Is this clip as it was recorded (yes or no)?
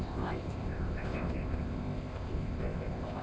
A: no